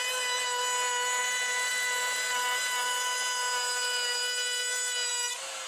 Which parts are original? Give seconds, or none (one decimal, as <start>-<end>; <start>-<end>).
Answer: 0.0-5.7